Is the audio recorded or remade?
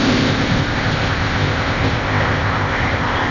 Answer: remade